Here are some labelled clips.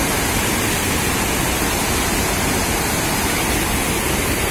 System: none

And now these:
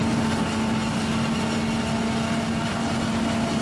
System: none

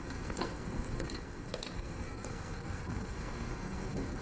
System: codec, SNAC